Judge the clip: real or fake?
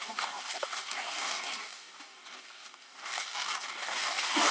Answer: fake